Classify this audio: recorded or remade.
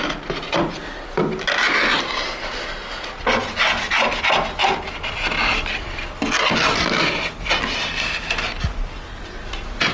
recorded